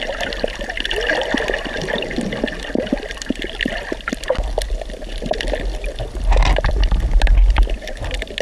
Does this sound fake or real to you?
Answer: real